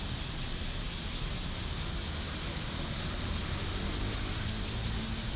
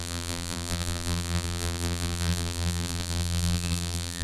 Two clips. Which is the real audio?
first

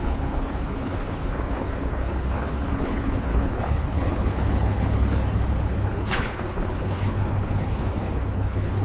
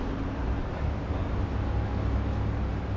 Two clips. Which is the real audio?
second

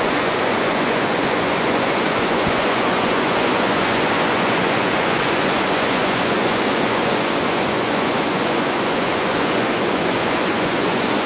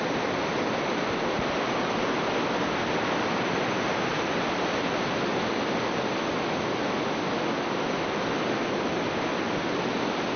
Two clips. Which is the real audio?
second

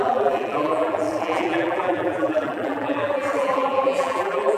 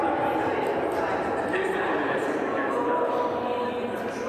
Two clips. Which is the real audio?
second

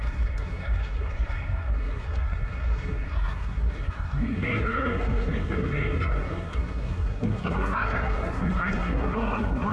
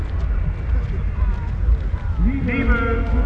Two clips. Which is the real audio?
second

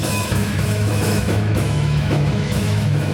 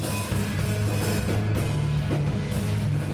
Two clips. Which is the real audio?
second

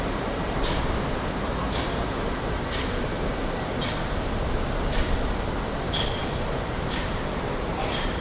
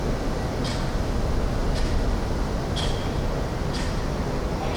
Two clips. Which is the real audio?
second